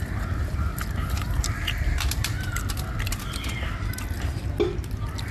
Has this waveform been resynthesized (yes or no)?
yes